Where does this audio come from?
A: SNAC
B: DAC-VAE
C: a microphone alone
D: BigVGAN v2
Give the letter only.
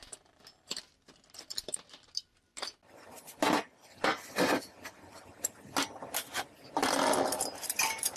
C